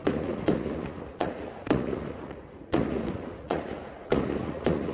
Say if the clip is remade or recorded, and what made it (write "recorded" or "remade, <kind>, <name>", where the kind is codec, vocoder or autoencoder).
remade, vocoder, Vocos